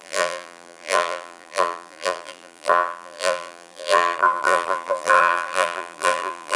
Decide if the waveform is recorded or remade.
remade